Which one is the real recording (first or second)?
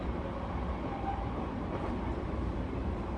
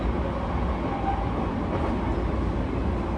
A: second